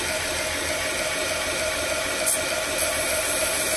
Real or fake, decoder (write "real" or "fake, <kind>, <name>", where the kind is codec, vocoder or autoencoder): real